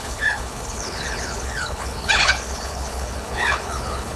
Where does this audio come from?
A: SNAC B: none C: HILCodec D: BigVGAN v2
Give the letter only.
C